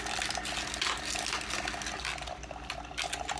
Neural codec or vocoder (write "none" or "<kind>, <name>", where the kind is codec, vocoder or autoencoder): none